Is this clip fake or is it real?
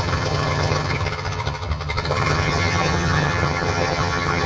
fake